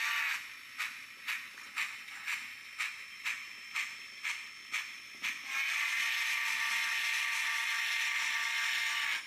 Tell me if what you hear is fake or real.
real